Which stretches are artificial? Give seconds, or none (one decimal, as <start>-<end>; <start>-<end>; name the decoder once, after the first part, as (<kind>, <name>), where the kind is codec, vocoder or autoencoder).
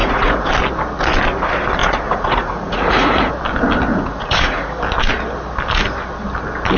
0.0-0.5 (vocoder, Vocos); 1.8-3.3; 3.9-4.8